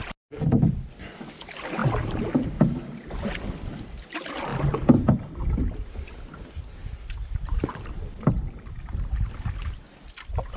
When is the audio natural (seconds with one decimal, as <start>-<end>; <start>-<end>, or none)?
0.0-10.6